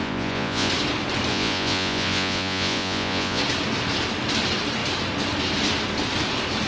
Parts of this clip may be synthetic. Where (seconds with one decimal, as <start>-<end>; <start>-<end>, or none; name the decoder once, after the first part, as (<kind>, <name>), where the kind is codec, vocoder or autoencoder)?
0.0-0.7 (vocoder, Vocos); 1.3-3.4